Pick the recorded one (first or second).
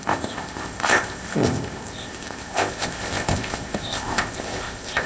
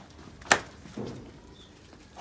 second